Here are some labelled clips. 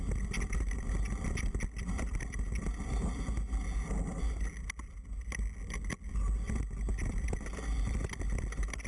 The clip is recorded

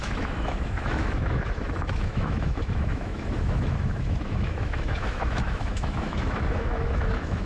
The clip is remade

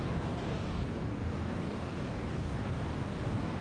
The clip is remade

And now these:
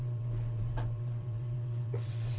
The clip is remade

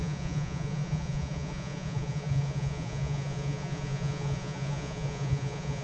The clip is remade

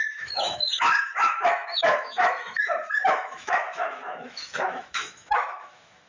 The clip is remade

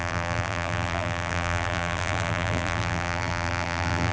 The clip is remade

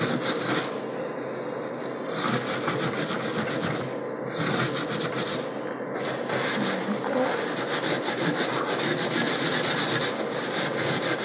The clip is recorded